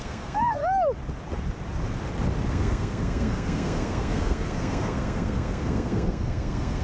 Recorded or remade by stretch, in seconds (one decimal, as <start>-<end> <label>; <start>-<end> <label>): 0.0-0.6 remade; 0.6-2.5 recorded; 2.5-6.8 remade